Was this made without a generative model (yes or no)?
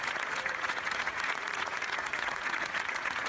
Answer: no